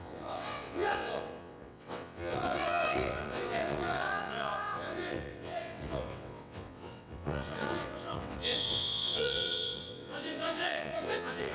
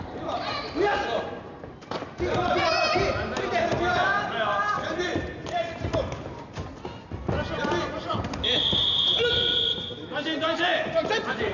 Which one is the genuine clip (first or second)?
second